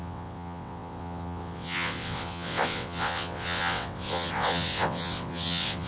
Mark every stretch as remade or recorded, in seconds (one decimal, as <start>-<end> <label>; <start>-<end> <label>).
0.0-5.9 remade